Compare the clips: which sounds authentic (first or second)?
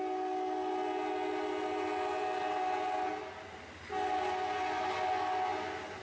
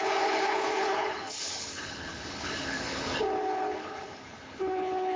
first